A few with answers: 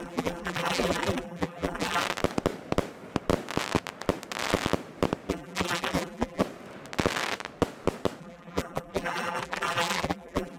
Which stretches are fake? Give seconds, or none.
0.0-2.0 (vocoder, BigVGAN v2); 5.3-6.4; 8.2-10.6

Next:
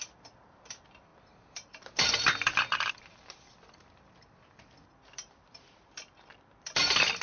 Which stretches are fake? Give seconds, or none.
0.0-7.2 (vocoder, BigVGAN v2)

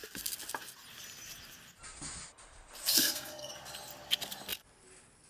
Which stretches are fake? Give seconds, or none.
2.8-3.5 (codec, SNAC)